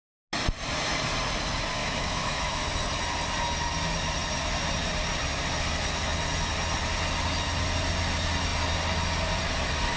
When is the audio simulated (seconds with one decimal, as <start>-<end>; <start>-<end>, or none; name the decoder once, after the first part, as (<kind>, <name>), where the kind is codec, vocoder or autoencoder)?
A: 1.8-2.6 (autoencoder, DAC-VAE)